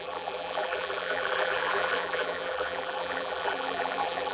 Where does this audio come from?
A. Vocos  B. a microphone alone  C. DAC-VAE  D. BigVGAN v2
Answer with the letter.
D